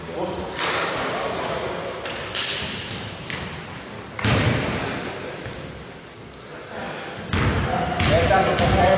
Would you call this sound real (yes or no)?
yes